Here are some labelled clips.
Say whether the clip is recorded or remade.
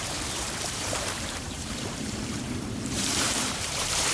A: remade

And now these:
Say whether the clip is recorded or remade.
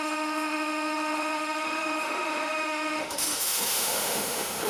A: remade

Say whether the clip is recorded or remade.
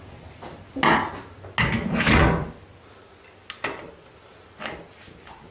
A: recorded